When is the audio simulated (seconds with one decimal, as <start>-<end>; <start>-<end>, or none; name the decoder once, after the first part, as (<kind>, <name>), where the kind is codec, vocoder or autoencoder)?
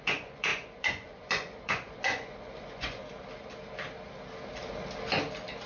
0.0-3.0 (vocoder, Vocos)